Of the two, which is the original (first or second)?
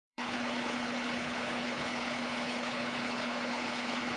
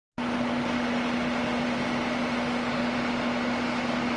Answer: second